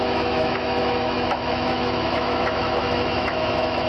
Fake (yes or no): yes